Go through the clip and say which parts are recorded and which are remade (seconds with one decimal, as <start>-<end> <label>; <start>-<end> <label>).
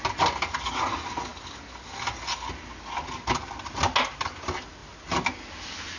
0.0-6.0 recorded